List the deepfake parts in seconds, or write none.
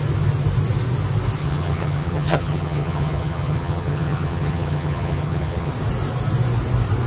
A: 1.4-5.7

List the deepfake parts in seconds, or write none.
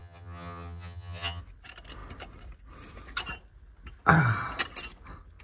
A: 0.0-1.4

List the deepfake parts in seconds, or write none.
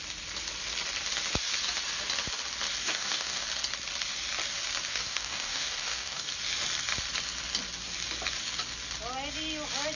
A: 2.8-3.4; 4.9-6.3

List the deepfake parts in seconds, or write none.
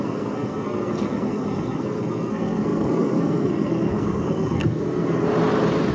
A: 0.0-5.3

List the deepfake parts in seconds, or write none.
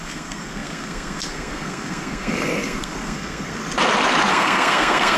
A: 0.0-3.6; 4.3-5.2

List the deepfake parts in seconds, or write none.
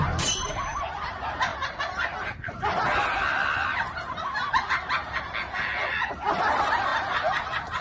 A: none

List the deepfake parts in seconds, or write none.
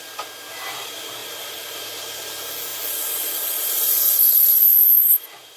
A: 1.2-2.0